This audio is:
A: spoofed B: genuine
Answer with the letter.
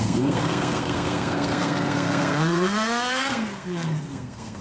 A